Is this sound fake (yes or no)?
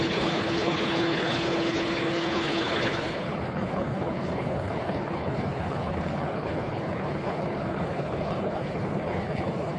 yes